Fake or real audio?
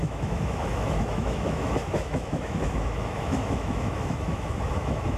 fake